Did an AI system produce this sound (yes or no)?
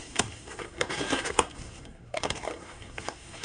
yes